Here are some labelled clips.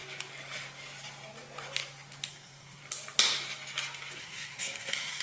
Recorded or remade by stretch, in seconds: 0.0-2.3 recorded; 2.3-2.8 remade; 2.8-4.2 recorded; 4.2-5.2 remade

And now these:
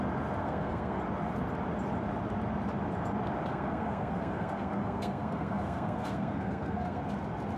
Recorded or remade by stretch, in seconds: 0.0-0.4 recorded; 0.4-1.0 remade; 1.0-3.5 recorded; 3.5-7.0 remade; 7.0-7.6 recorded

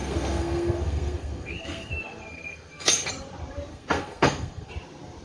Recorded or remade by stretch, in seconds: 0.0-3.1 remade; 3.1-3.7 recorded; 3.7-4.7 remade; 4.7-5.2 recorded